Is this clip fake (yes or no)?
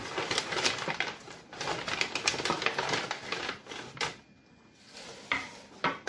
no